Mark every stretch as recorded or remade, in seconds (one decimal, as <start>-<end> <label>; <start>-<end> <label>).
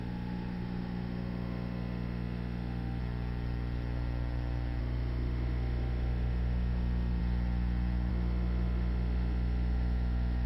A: 0.0-3.0 remade; 3.0-4.8 recorded; 4.8-7.2 remade; 7.2-8.1 recorded; 8.1-10.5 remade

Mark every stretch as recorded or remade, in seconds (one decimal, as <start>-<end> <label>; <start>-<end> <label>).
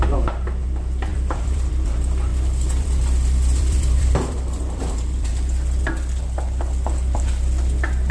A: 0.0-1.1 recorded; 1.1-1.7 remade; 1.7-2.3 recorded; 2.3-4.8 remade; 4.8-8.1 recorded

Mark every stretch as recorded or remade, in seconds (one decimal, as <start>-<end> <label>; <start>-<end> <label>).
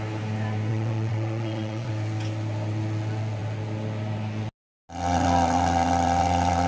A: 0.0-0.7 recorded; 0.7-1.9 remade; 1.9-6.7 recorded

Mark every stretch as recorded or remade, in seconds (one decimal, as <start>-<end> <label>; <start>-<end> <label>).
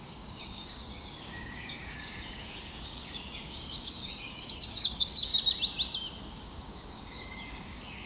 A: 0.0-5.3 remade; 5.3-6.2 recorded; 6.2-8.1 remade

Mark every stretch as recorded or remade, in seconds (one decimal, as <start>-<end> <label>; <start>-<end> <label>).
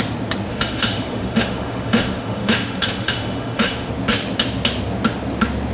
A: 0.0-0.5 recorded; 0.5-3.9 remade; 3.9-5.7 recorded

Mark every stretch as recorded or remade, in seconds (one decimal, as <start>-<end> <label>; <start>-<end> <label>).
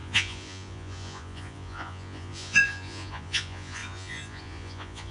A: 0.0-5.1 remade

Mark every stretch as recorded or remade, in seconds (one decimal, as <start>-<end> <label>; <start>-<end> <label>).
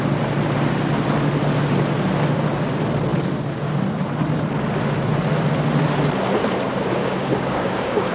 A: 0.0-7.0 recorded; 7.0-8.1 remade